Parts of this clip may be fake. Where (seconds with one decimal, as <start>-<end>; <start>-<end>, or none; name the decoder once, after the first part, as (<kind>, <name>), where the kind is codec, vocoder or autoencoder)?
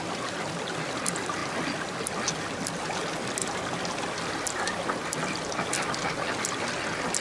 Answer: none